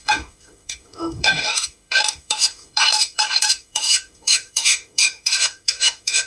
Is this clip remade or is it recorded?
remade